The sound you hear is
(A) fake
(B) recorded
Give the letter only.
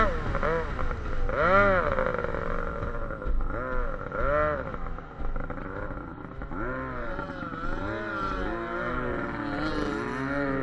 B